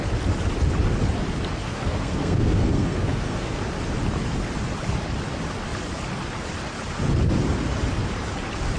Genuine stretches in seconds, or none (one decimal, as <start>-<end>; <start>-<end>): 0.0-1.6; 3.6-8.8